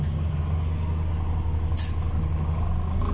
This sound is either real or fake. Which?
real